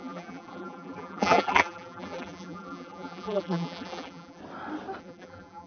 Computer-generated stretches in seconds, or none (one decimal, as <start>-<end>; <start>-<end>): 0.0-4.4; 5.0-5.7